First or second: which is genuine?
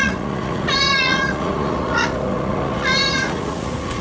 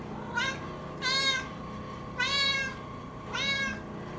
second